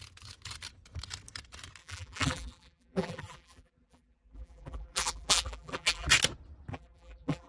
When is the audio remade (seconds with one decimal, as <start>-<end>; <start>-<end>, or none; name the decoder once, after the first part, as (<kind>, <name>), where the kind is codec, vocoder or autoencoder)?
1.8-6.1 (vocoder, BigVGAN v2); 6.7-7.5